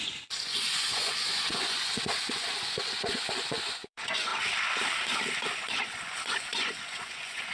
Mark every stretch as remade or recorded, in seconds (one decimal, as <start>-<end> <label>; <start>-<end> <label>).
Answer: 0.0-4.3 remade; 4.3-5.4 recorded; 5.4-7.5 remade